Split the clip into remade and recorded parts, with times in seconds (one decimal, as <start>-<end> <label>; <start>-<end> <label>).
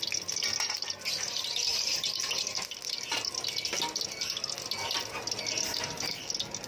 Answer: 0.0-1.7 recorded; 1.7-3.0 remade; 3.0-5.7 recorded; 5.7-6.3 remade; 6.3-6.7 recorded